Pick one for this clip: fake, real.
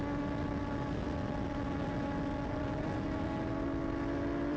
real